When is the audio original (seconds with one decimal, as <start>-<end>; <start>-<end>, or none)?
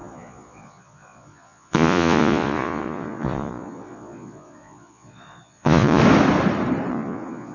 6.0-6.9